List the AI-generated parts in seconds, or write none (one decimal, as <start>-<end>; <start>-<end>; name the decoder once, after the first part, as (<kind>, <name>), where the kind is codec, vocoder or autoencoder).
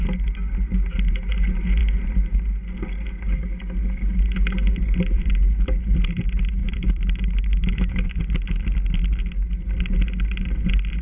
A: 6.6-8.2 (autoencoder, DAC-VAE)